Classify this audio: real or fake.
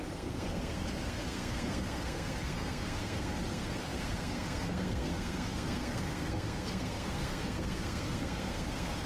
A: fake